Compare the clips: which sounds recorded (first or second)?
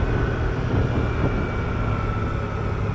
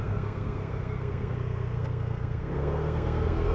first